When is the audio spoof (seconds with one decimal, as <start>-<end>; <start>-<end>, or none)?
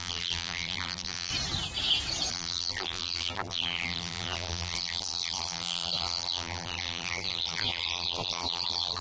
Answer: 0.0-1.3; 2.3-9.0